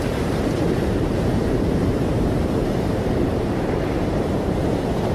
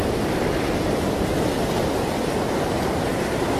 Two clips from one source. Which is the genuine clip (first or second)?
second